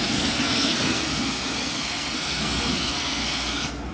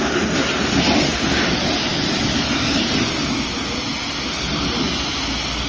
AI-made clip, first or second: first